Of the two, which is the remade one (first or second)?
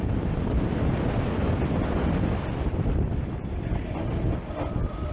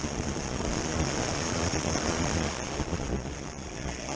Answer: second